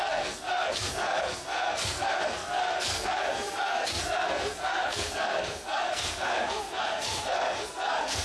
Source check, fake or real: fake